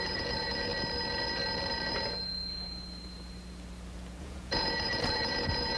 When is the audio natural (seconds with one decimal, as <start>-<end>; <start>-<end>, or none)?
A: 0.7-4.2